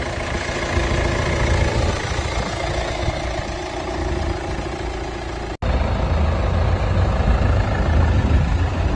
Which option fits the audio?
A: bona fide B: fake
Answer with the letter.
A